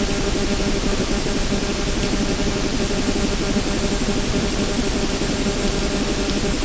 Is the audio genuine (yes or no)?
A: yes